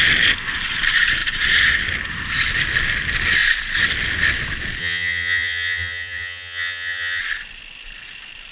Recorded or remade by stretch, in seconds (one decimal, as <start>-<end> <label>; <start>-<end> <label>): 0.0-4.8 recorded; 4.8-7.2 remade; 7.2-8.5 recorded